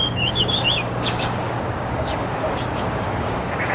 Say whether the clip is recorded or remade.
remade